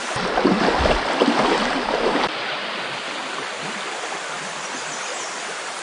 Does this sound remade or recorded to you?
recorded